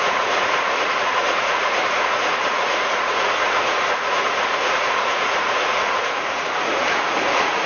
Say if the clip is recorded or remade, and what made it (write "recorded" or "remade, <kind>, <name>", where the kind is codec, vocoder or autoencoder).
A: remade, vocoder, Vocos